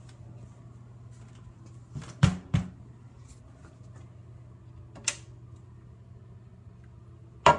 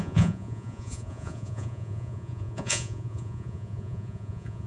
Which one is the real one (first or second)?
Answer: first